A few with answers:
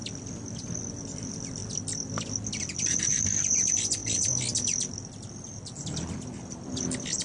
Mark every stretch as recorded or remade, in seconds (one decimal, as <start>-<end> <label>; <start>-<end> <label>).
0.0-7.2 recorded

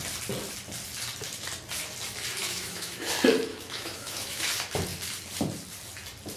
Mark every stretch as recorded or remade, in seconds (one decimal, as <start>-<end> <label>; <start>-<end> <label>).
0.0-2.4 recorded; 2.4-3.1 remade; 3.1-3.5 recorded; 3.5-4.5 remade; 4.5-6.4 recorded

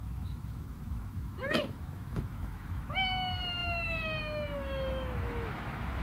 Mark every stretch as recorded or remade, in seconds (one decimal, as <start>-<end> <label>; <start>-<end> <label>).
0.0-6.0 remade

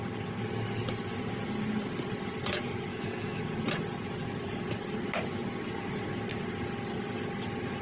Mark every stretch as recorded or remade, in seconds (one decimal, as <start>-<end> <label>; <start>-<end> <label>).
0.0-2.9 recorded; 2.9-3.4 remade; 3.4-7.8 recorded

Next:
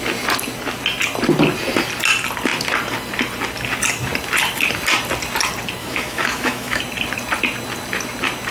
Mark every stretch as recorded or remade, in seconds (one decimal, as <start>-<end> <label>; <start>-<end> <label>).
0.0-5.8 recorded; 5.8-6.8 remade; 6.8-8.5 recorded

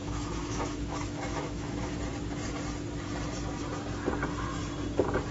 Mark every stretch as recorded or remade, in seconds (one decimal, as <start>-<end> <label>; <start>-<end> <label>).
0.0-2.0 remade; 2.0-5.3 recorded

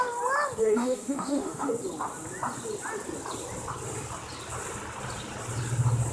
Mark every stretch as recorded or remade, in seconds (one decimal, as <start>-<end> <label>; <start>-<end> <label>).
0.0-0.6 recorded; 0.6-1.7 remade; 1.7-6.1 recorded